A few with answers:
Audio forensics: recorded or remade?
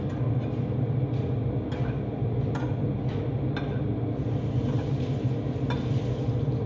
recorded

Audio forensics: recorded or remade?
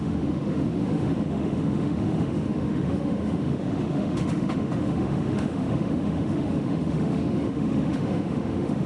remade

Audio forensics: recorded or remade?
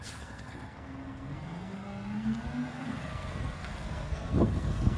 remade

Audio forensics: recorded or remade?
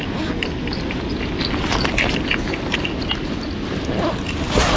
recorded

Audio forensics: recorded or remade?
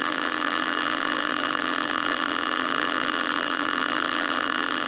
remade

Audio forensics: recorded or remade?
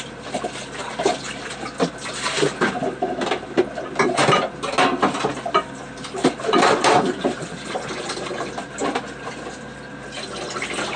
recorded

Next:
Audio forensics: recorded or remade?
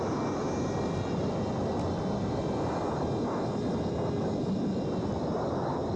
recorded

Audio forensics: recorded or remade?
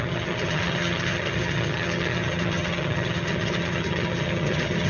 remade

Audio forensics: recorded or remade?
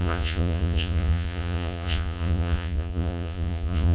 remade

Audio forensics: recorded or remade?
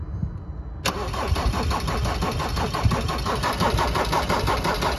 recorded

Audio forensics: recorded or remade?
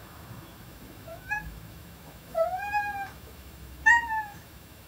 remade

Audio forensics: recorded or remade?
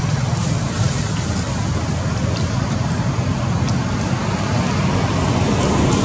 recorded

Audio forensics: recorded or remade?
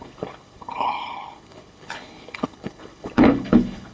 remade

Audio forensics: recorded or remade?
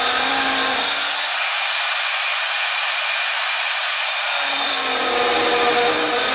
recorded